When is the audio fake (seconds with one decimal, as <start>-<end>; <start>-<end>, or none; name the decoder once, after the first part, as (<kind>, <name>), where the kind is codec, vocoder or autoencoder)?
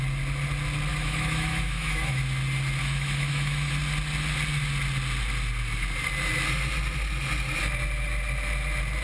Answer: 0.9-2.2 (autoencoder, DAC-VAE); 2.8-3.7